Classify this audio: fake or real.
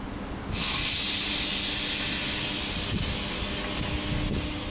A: real